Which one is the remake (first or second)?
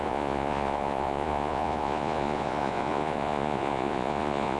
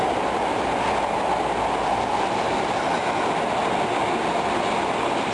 first